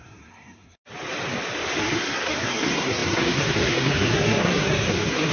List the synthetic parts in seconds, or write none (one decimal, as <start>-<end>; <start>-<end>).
0.0-0.8; 1.8-5.3